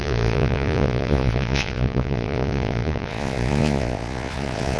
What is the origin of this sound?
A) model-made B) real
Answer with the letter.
A